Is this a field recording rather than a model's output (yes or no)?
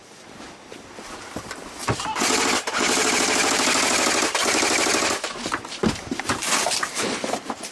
no